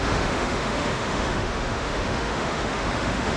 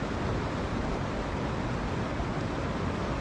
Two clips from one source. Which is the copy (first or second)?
first